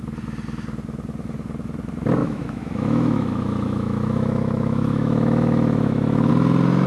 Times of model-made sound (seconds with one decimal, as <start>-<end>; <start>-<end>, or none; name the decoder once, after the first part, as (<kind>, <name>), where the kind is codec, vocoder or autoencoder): 2.2-6.3 (autoencoder, DAC-VAE)